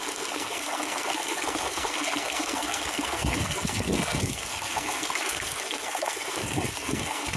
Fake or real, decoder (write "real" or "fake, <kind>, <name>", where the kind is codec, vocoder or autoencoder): fake, codec, SNAC